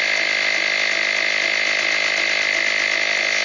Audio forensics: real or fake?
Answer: real